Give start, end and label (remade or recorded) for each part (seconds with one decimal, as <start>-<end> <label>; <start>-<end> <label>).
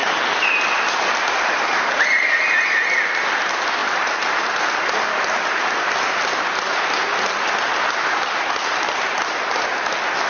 0.0-1.6 remade; 1.6-10.3 recorded